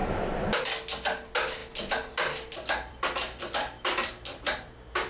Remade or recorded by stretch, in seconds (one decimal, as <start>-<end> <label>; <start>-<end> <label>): 0.0-0.6 remade; 0.6-1.6 recorded; 1.6-5.1 remade